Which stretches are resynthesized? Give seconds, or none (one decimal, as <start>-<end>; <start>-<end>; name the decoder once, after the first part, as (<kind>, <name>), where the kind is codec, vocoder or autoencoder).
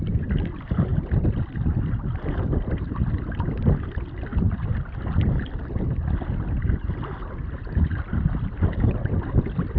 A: 0.9-1.4 (vocoder, BigVGAN v2); 4.3-5.0